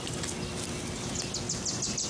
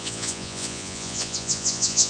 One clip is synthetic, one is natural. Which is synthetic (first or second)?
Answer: second